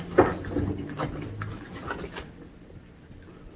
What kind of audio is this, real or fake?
real